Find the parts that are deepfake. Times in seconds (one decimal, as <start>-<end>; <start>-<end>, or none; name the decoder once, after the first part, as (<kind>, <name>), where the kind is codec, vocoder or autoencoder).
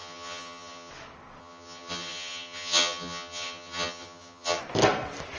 0.0-0.9 (vocoder, HiFi-GAN); 1.4-4.6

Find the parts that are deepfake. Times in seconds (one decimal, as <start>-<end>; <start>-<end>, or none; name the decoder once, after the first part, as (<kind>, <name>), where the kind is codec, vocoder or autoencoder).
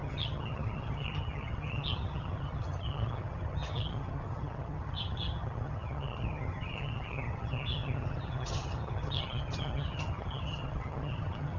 0.0-11.6 (vocoder, HiFi-GAN)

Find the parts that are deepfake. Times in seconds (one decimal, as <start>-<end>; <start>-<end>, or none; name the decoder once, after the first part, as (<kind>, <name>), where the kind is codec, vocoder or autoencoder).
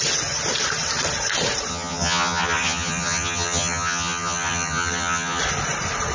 1.7-5.4 (vocoder, HiFi-GAN)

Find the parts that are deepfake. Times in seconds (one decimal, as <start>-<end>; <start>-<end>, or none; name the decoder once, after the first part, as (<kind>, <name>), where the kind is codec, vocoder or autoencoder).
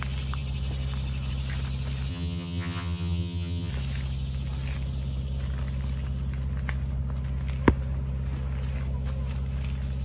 2.1-3.7 (vocoder, HiFi-GAN)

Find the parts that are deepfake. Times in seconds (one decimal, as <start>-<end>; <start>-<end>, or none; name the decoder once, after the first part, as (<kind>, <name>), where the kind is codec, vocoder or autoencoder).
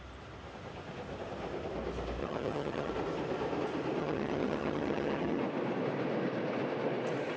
2.2-2.9 (vocoder, HiFi-GAN); 4.0-5.4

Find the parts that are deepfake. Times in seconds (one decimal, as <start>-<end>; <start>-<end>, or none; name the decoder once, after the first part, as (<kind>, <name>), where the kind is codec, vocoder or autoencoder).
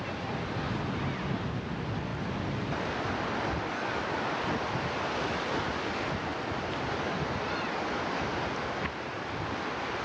none